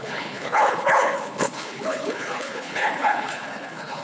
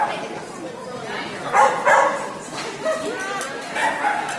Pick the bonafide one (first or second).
second